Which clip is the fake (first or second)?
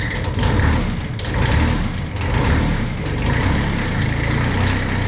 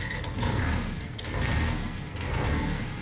second